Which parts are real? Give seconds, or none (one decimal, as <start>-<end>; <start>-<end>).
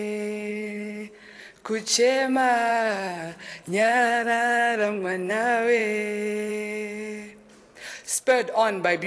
0.0-0.5; 1.4-2.7; 5.3-9.1